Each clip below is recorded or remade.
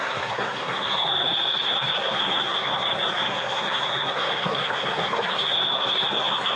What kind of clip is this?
remade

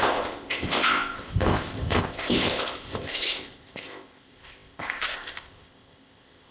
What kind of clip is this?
remade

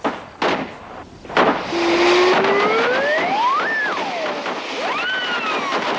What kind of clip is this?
recorded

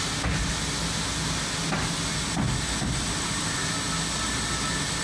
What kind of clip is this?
recorded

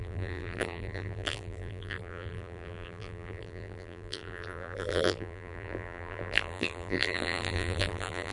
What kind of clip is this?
remade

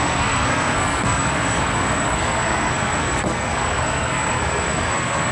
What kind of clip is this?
remade